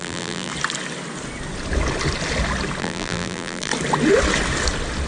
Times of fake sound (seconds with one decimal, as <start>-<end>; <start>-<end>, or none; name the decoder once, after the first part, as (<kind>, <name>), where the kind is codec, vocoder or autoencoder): 0.0-0.5 (vocoder, BigVGAN v2); 2.8-3.7